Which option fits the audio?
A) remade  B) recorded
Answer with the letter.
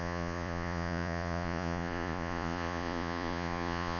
A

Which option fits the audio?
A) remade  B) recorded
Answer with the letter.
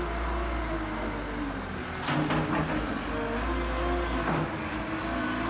B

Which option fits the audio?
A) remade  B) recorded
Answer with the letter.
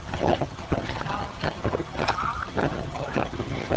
A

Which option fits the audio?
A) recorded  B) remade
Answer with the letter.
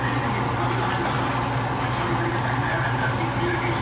A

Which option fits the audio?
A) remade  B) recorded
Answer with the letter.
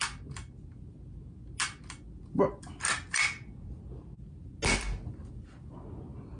B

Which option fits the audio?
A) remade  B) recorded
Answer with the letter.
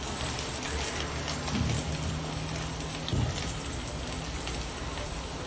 B